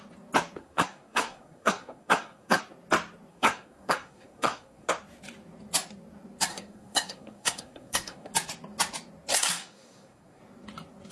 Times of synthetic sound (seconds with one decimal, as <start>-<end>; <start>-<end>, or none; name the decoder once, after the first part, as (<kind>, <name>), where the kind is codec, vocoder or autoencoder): 0.6-2.6 (codec, SNAC); 3.3-4.9; 6.5-8.3; 9.3-10.4